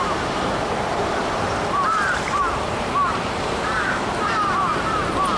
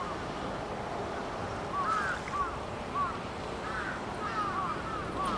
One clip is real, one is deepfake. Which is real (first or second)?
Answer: second